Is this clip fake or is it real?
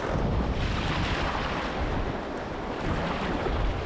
real